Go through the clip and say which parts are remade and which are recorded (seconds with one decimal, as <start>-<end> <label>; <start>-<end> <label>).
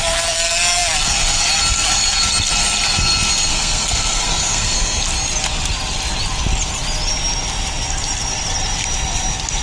0.0-3.5 recorded; 3.5-5.0 remade; 5.0-9.6 recorded